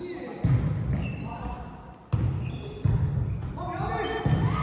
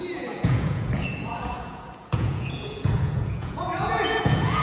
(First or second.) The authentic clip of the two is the first